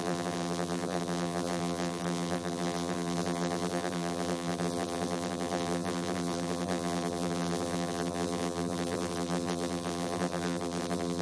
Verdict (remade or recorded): remade